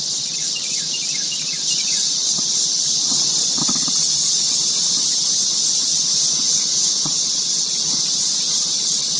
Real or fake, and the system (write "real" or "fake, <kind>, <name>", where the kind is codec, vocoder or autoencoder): fake, vocoder, WaveNeXt